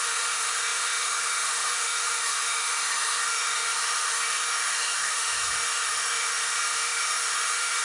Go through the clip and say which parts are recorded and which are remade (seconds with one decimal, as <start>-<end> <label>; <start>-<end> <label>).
0.0-7.8 remade